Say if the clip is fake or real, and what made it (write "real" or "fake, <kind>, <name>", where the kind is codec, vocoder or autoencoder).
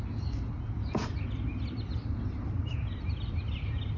real